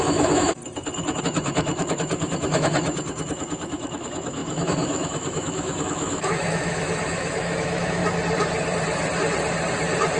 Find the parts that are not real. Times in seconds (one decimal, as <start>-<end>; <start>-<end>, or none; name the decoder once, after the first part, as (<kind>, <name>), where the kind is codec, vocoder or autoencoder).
0.0-0.6 (autoencoder, DAC-VAE); 1.2-8.0